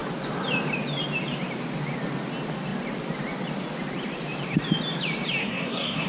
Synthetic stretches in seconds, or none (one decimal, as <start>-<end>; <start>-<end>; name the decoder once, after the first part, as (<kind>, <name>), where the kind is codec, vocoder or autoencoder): 5.4-6.1 (codec, SNAC)